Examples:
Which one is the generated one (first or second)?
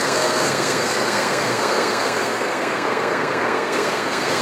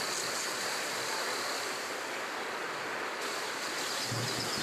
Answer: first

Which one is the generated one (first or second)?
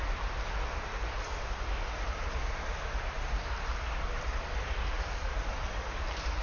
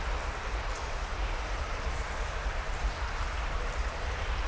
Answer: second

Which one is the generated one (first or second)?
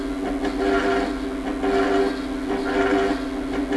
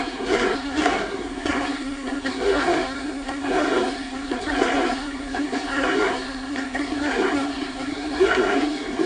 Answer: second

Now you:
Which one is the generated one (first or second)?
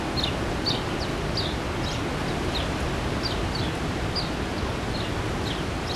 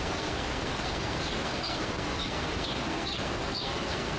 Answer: second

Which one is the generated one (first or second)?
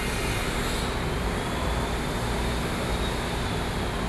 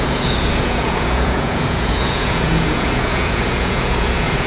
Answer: second